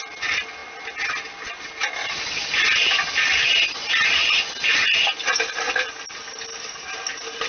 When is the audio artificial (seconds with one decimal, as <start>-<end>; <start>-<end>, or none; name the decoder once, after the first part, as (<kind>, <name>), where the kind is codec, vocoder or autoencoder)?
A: none